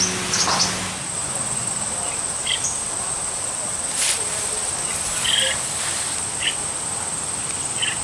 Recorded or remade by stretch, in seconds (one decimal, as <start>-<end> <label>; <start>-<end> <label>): 0.0-1.2 recorded; 1.2-1.7 remade; 1.7-8.0 recorded